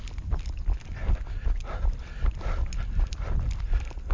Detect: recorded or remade recorded